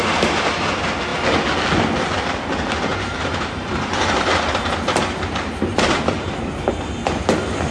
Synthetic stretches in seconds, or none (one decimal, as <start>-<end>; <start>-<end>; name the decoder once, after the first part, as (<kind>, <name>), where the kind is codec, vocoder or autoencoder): 2.9-6.8 (vocoder, BigVGAN v2)